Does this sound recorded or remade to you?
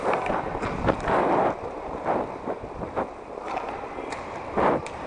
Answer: remade